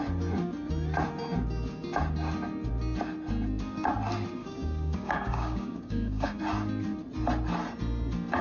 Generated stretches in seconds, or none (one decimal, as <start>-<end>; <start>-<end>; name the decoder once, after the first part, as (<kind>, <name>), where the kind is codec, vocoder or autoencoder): 4.4-6.4 (codec, DAC)